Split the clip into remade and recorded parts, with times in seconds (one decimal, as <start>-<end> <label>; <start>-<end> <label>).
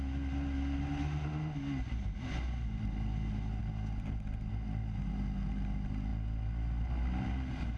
0.0-7.8 recorded